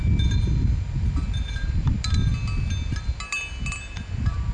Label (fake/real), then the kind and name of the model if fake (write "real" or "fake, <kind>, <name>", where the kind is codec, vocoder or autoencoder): real